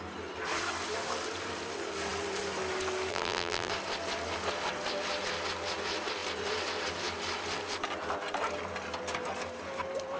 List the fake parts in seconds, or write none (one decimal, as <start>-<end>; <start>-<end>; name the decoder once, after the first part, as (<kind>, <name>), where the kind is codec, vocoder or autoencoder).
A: 3.1-3.7 (vocoder, BigVGAN v2)